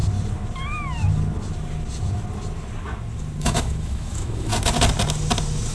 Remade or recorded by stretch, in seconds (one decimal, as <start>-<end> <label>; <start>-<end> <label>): 0.0-3.4 recorded; 3.4-4.5 remade; 4.5-5.7 recorded

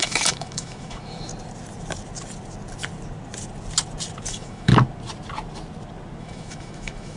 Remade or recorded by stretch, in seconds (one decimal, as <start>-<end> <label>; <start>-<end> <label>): 0.0-1.3 remade; 1.3-4.3 recorded; 4.3-4.7 remade; 4.7-6.2 recorded; 6.2-7.2 remade

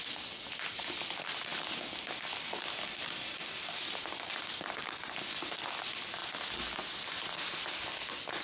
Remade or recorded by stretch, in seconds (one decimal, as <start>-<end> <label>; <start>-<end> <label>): 0.0-8.4 recorded

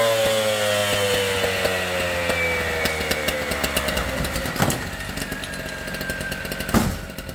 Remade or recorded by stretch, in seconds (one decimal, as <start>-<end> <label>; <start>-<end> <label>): 0.0-7.3 recorded

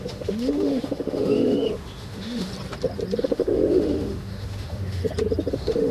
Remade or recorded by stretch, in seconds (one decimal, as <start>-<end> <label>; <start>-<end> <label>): 0.0-2.5 remade; 2.5-3.2 recorded; 3.2-5.0 remade; 5.0-5.5 recorded; 5.5-5.9 remade

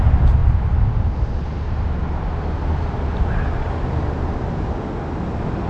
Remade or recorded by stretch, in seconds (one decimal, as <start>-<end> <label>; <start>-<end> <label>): 0.0-5.7 recorded

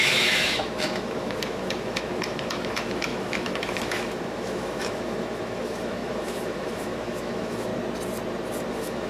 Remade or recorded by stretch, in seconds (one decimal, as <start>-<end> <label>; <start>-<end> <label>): 0.0-7.7 remade; 7.7-8.7 recorded; 8.7-9.1 remade

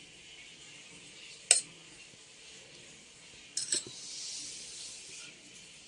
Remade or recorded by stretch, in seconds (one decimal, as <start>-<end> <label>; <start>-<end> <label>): 0.0-5.9 recorded